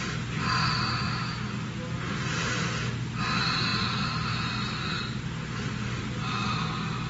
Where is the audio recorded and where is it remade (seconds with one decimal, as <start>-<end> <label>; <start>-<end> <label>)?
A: 0.0-7.1 recorded